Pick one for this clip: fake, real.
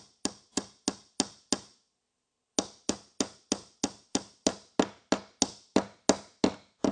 real